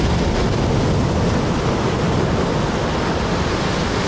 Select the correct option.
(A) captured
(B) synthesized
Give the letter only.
A